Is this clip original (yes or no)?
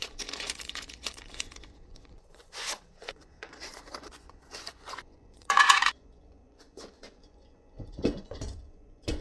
no